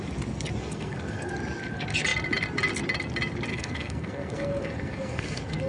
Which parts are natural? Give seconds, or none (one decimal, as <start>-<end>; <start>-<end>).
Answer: 0.0-0.6; 1.3-3.5